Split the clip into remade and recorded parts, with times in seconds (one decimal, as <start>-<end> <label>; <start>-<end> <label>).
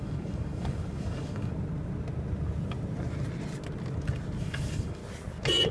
0.0-1.5 remade; 1.5-4.4 recorded; 4.4-5.0 remade; 5.0-5.7 recorded